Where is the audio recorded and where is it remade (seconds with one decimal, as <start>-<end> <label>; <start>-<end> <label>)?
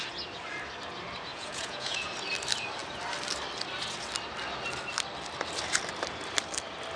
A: 0.0-1.3 recorded; 1.3-2.1 remade; 2.1-7.0 recorded